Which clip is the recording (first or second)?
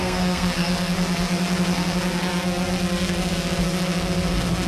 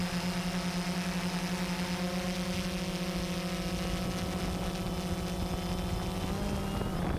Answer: second